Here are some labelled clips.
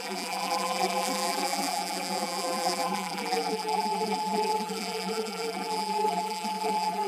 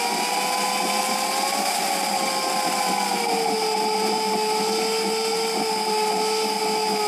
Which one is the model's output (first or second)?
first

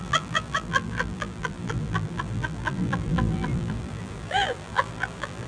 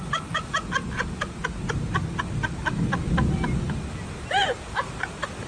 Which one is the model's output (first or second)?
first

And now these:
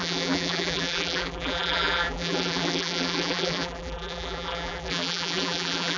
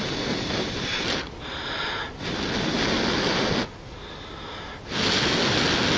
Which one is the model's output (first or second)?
first